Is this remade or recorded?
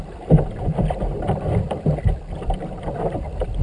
remade